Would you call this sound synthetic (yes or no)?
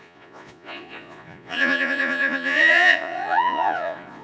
yes